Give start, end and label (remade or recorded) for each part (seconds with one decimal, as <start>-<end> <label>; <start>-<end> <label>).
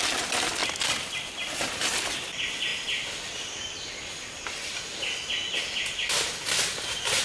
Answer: 0.0-7.2 recorded